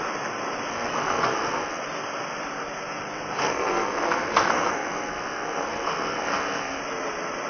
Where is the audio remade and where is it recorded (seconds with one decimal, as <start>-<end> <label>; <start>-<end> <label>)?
0.0-0.7 recorded; 0.7-1.8 remade; 1.8-3.4 recorded; 3.4-6.8 remade; 6.8-7.5 recorded